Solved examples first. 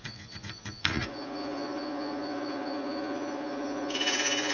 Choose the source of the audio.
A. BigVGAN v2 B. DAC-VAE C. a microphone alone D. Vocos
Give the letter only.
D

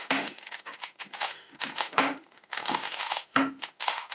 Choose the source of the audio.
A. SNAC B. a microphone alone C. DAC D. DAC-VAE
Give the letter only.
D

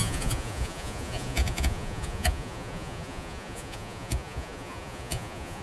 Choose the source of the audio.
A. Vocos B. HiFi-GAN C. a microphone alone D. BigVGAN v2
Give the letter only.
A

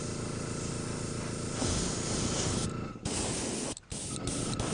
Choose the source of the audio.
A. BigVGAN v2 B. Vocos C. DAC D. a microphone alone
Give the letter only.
D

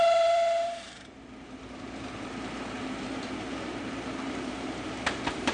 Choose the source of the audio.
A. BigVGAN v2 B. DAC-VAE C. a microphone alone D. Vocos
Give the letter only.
A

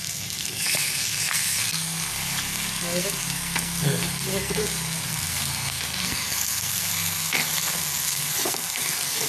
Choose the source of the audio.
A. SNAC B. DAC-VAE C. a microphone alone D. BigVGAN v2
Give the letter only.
A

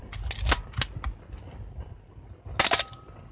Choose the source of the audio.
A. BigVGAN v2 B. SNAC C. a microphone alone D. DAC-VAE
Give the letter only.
C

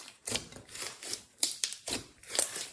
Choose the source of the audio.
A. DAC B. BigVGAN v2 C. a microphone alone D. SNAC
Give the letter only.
B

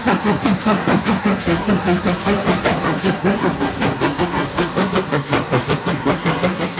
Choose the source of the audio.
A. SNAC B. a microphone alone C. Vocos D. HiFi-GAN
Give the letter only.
A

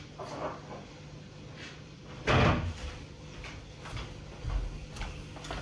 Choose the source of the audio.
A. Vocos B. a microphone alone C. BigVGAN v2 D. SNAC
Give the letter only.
B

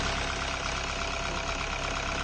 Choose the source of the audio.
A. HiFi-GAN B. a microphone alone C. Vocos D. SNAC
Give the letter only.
B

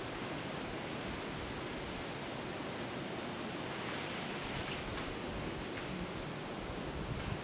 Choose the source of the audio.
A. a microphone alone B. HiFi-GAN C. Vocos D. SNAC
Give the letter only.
A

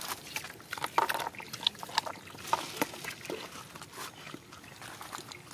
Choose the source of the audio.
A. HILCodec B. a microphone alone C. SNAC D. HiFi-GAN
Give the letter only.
B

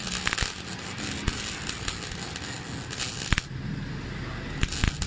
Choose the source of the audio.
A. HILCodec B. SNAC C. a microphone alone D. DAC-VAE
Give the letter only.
C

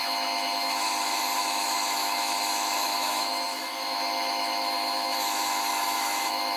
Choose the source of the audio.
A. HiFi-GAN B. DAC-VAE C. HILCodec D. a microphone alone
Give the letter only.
B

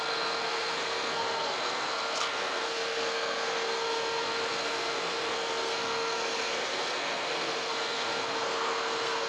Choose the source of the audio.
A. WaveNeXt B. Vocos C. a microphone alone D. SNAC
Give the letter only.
D